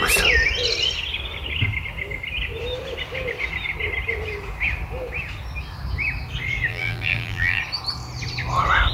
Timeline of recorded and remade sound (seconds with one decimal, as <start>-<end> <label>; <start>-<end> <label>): 0.0-6.7 recorded; 6.7-7.6 remade; 7.6-8.9 recorded